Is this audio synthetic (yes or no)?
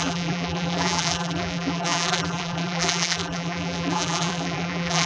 yes